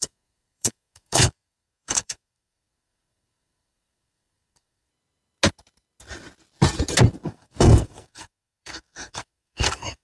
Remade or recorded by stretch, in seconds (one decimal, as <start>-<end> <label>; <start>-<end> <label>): 0.0-4.9 remade; 4.9-7.2 recorded; 7.2-10.0 remade